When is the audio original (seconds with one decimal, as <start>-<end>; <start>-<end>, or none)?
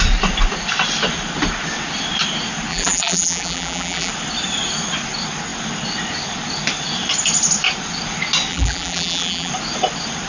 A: 0.0-2.7; 4.1-8.5; 9.5-10.3